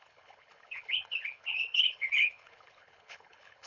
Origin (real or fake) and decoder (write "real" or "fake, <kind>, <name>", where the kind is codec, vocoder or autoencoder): fake, codec, HILCodec